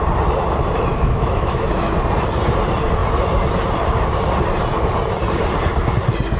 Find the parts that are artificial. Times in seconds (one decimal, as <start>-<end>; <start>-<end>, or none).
0.9-1.9